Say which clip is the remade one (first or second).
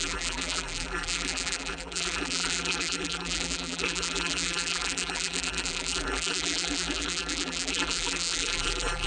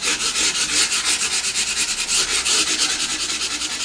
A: first